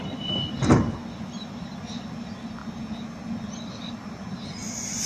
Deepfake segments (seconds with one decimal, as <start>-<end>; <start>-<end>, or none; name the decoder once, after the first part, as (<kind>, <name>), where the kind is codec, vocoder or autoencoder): none